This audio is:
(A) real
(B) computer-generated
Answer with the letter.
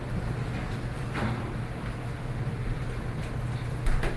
A